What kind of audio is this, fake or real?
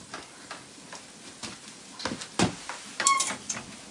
real